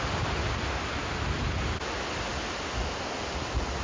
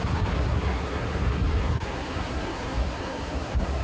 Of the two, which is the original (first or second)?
first